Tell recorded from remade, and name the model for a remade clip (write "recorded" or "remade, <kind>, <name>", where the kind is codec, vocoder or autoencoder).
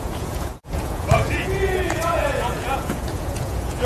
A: remade, vocoder, Vocos